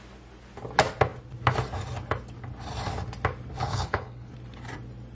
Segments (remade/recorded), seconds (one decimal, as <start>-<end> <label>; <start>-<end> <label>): 0.0-3.6 recorded; 3.6-4.3 remade; 4.3-5.1 recorded